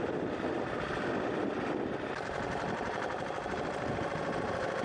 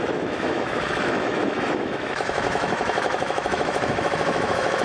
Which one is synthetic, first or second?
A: second